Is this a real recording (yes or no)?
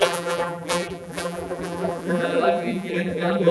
no